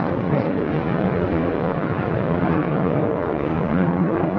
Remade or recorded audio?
remade